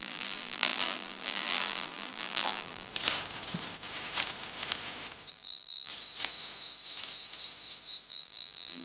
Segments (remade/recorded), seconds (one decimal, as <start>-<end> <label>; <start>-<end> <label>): 0.0-2.9 remade; 2.9-5.3 recorded; 5.3-5.9 remade; 5.9-8.1 recorded; 8.1-8.8 remade